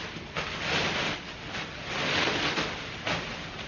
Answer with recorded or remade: recorded